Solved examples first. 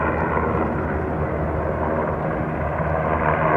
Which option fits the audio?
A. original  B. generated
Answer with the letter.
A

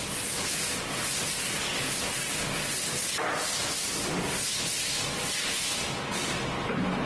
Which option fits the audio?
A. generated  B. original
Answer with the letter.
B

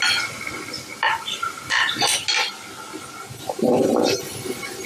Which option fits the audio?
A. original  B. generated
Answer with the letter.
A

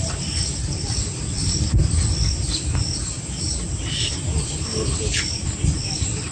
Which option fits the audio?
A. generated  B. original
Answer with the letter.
B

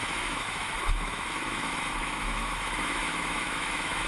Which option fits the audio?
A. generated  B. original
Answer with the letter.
A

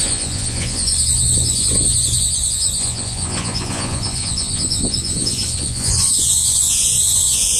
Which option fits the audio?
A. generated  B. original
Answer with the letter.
A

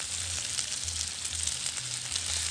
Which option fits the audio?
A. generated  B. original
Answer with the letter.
B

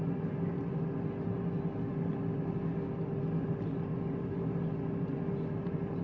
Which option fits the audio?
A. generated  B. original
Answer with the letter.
B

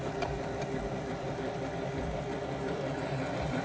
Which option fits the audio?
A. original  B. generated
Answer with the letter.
B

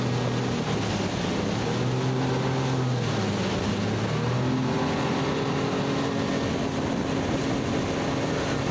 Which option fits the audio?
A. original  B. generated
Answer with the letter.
A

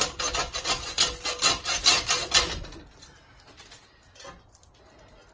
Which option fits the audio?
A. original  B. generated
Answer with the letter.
A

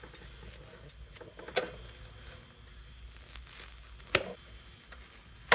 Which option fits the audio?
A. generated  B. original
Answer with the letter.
B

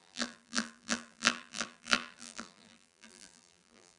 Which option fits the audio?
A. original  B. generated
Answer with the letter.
B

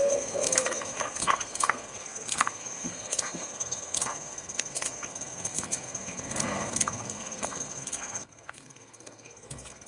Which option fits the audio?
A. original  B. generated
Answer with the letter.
B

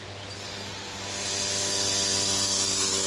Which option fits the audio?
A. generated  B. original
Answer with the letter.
B